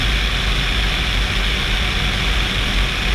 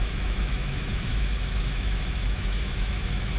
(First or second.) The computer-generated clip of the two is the second